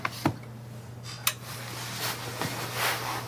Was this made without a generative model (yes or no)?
yes